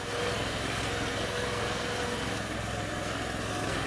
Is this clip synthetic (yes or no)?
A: yes